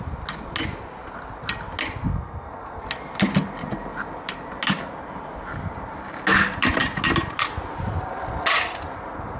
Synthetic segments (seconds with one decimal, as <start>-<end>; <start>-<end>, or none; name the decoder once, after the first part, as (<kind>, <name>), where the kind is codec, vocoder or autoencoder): 2.1-2.8 (codec, SNAC)